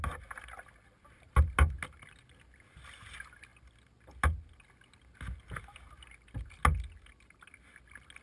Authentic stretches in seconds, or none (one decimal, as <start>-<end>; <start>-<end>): 0.0-8.2